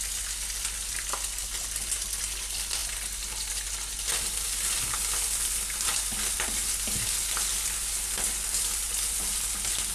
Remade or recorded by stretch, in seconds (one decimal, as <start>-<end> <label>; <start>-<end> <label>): 0.0-9.9 recorded